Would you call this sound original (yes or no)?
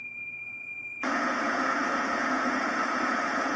no